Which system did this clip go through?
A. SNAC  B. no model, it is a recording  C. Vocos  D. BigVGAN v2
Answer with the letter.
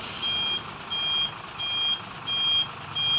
B